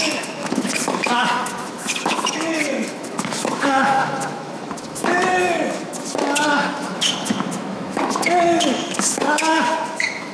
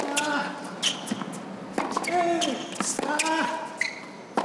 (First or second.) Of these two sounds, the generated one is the first